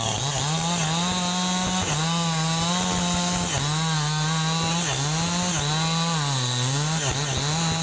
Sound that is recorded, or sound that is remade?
recorded